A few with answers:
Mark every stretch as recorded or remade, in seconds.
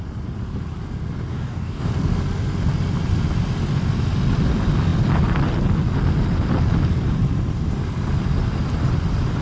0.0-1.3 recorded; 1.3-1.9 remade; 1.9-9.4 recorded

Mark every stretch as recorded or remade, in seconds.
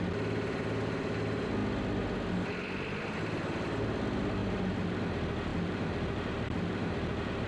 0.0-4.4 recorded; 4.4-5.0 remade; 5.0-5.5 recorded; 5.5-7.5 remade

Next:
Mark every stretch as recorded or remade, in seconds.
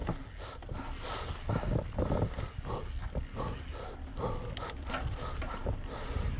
0.0-6.4 recorded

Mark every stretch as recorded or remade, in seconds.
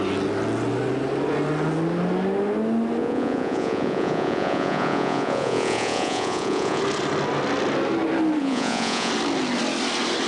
0.0-3.0 recorded; 3.0-6.8 remade; 6.8-8.4 recorded; 8.4-9.1 remade; 9.1-10.3 recorded